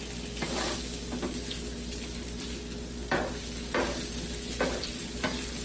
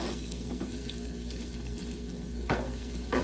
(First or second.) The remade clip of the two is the second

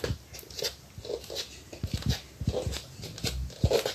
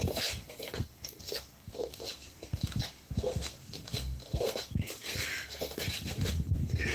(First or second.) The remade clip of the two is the second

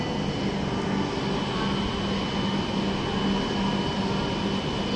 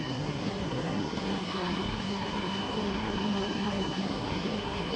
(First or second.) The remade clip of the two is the second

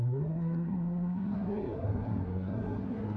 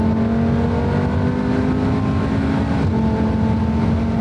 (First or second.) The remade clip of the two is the first